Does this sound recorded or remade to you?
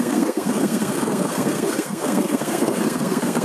remade